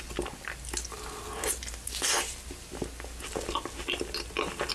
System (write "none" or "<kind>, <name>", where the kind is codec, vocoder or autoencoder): none